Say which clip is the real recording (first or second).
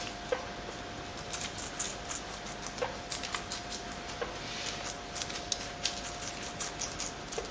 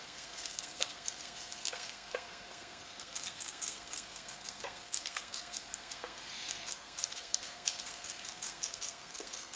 first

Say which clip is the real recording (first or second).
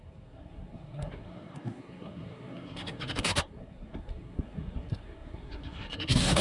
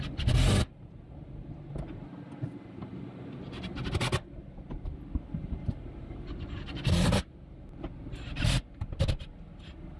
second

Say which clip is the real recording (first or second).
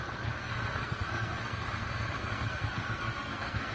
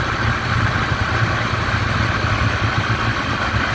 second